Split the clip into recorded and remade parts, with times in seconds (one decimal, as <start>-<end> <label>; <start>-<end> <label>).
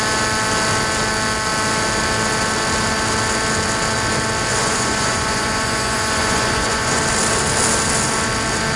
0.0-4.5 recorded; 4.5-7.0 remade; 7.0-8.8 recorded